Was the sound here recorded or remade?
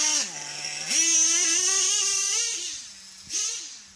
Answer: recorded